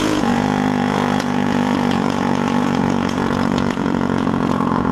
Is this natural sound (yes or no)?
no